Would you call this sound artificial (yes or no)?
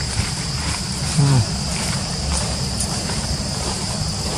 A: yes